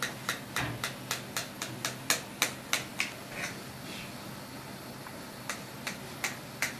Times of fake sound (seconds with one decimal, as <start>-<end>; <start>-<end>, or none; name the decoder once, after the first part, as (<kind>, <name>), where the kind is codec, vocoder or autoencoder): none